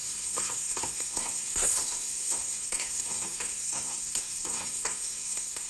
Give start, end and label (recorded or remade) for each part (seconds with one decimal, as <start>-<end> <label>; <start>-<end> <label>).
0.0-5.7 remade